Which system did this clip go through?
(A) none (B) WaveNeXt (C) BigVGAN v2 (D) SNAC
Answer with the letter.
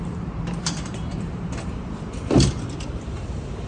C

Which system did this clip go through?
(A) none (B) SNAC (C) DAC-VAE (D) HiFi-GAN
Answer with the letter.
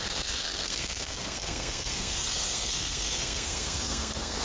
B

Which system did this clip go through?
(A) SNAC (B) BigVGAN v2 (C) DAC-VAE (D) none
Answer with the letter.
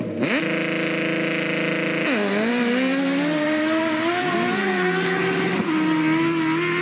D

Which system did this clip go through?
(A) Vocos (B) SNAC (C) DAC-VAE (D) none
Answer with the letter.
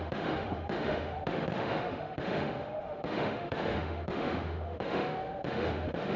C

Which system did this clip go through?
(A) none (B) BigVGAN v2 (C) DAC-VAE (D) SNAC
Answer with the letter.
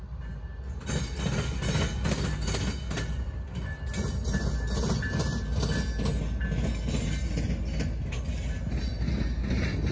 A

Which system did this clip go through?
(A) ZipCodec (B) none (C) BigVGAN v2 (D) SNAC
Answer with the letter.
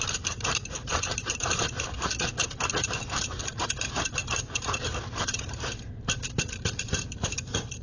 C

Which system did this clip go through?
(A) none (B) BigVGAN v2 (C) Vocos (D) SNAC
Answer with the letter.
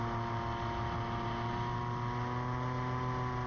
A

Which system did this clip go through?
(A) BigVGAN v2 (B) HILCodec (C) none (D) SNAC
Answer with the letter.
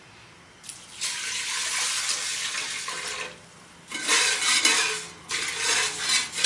C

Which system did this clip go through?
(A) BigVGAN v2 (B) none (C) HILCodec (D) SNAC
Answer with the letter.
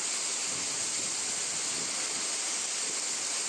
B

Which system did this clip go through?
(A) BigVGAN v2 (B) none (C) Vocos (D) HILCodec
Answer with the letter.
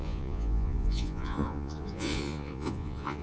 C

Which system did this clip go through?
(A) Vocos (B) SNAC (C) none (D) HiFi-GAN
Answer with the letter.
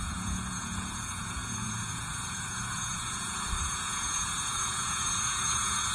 A